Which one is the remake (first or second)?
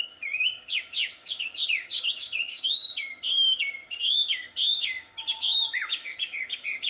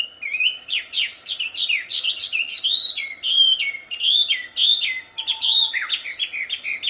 first